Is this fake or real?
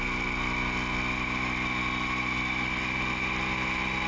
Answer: real